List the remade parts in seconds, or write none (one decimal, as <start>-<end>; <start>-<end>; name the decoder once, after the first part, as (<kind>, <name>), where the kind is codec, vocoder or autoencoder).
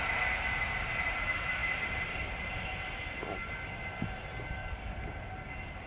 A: 1.6-2.9 (vocoder, BigVGAN v2); 4.6-5.3